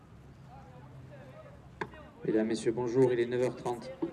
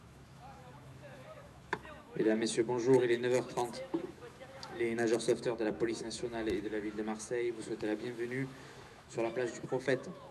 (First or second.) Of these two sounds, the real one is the first